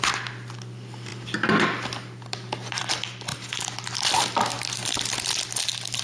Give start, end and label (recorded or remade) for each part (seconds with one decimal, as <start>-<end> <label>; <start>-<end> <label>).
0.0-1.1 recorded; 1.1-2.8 remade; 2.8-3.3 recorded; 3.3-6.0 remade